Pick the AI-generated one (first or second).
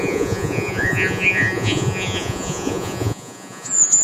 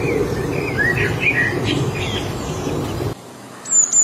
first